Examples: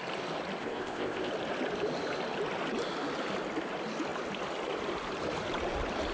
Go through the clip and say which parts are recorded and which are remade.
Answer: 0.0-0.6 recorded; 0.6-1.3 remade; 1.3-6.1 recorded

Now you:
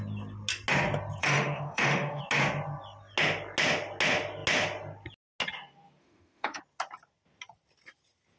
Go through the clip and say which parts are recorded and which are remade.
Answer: 0.0-1.2 recorded; 1.2-2.2 remade; 2.2-6.0 recorded; 6.0-6.6 remade; 6.6-8.4 recorded

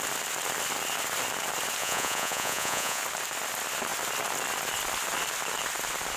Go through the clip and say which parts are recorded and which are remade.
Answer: 0.0-1.8 recorded; 1.8-3.0 remade; 3.0-6.2 recorded